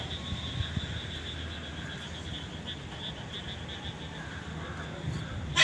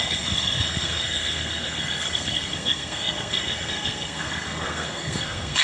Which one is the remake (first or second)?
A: second